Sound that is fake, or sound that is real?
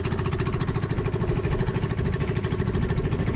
real